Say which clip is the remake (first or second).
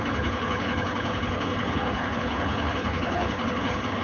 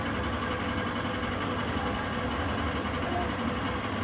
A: first